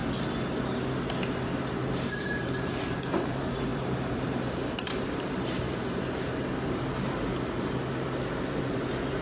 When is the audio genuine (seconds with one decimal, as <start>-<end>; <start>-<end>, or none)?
0.0-2.2